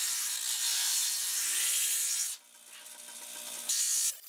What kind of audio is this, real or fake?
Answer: real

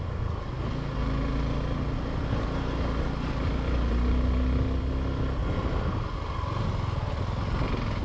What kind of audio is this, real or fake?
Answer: real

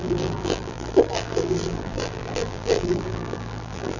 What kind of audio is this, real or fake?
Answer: fake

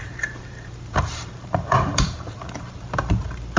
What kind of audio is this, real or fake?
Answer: fake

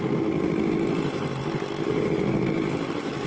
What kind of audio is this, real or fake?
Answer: fake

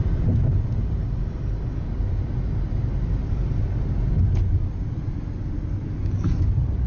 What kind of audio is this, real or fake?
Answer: real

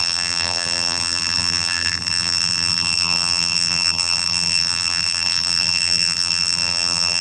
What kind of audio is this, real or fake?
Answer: fake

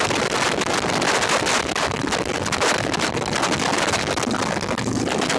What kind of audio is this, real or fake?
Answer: real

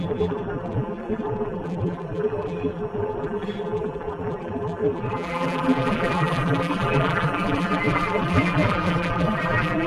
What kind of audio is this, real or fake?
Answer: fake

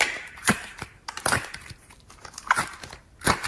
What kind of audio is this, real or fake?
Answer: fake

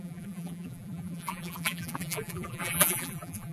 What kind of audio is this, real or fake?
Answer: fake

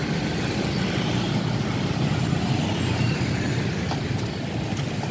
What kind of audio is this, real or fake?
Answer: fake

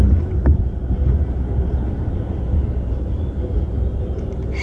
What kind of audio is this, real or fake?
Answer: real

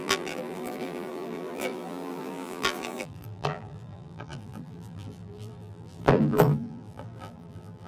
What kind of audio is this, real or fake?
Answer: fake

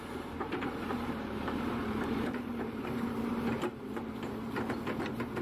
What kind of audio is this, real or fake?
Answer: fake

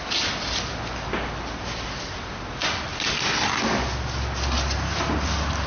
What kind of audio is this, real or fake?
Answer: real